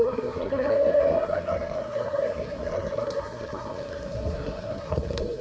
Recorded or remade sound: remade